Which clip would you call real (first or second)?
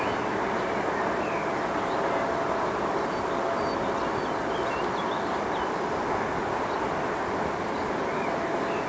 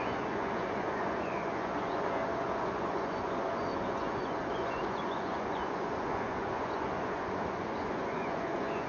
first